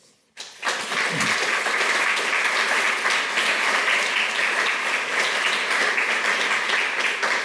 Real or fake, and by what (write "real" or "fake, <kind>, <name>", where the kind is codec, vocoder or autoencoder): real